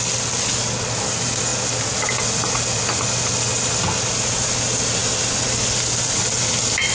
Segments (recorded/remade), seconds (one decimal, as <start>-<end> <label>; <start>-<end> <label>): 0.0-6.9 recorded